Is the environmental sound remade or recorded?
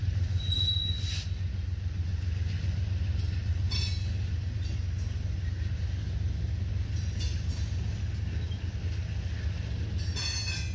recorded